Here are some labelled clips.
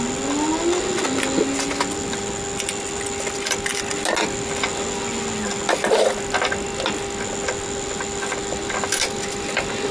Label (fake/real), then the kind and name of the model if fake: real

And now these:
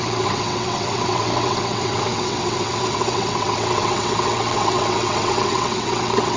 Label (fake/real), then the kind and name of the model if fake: fake, vocoder, WaveNeXt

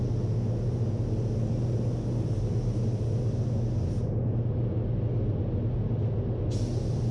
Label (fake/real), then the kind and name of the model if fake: real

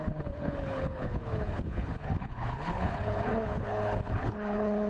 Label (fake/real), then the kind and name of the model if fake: fake, codec, HILCodec